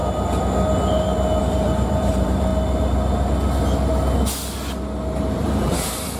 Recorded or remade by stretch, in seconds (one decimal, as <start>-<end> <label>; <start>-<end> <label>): 0.0-1.4 recorded; 1.4-2.5 remade; 2.5-5.2 recorded; 5.2-6.2 remade